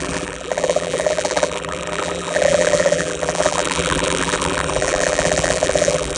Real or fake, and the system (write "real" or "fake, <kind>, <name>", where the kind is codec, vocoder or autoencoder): fake, vocoder, BigVGAN v2